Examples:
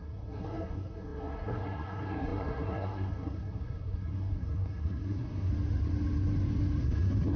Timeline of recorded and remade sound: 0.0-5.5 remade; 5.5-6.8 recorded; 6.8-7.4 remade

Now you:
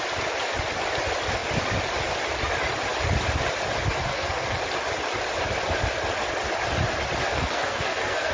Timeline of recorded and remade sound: 0.0-4.1 recorded; 4.1-4.6 remade; 4.6-7.3 recorded; 7.3-8.3 remade

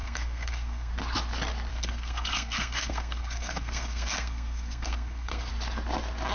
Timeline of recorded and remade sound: 0.0-0.9 remade; 0.9-1.7 recorded; 1.7-5.5 remade; 5.5-6.3 recorded

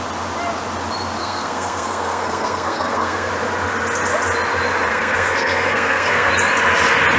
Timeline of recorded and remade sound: 0.0-1.2 recorded; 1.2-3.3 remade; 3.3-4.9 recorded; 4.9-6.3 remade; 6.3-7.2 recorded

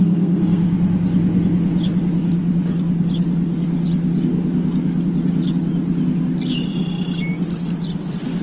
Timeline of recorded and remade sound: 0.0-0.6 remade; 0.6-8.4 recorded

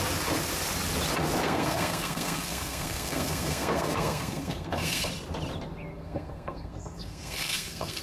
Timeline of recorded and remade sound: 0.0-1.4 recorded; 1.4-5.1 remade; 5.1-5.9 recorded; 5.9-8.0 remade

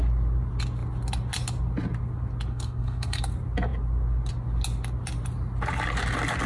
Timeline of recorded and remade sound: 0.0-2.5 recorded; 2.5-3.2 remade; 3.2-6.5 recorded

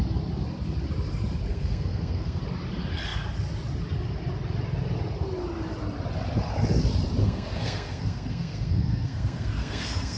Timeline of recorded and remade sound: 0.0-1.5 recorded; 1.5-2.4 remade; 2.4-7.2 recorded; 7.2-10.2 remade